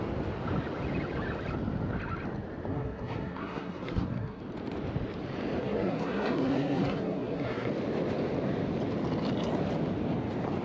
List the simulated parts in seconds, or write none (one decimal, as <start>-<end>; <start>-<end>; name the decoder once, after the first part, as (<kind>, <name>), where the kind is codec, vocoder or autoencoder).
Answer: 2.7-4.4 (codec, SNAC); 5.6-7.7